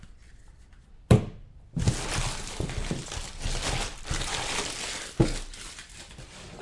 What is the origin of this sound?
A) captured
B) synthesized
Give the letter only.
A